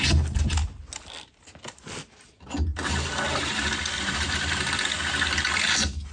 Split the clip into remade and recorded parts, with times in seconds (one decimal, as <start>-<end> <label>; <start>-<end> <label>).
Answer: 0.0-6.1 recorded